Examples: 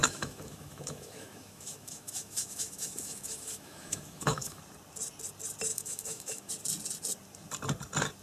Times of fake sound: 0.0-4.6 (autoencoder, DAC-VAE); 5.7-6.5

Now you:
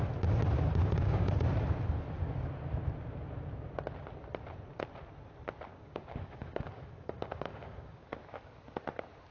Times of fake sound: 0.8-1.3 (codec, DAC); 5.7-8.1

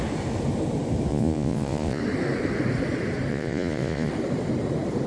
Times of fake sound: 1.1-2.0 (vocoder, Vocos); 3.3-4.1

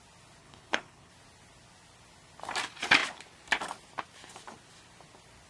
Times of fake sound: 0.4-1.1 (codec, HILCodec)

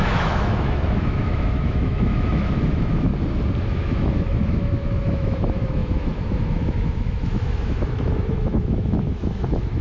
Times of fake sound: 0.0-3.1 (autoencoder, DAC-VAE); 3.6-9.8

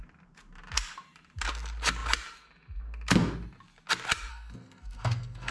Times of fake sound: 4.3-5.5 (codec, SNAC)

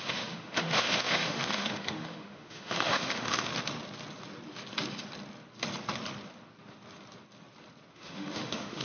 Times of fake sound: 0.0-3.5 (autoencoder, DAC-VAE); 7.9-8.8

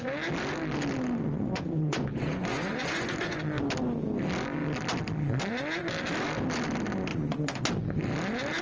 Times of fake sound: 1.3-3.4 (vocoder, Vocos); 7.1-7.6